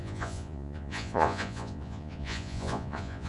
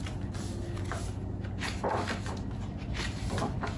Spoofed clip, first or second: first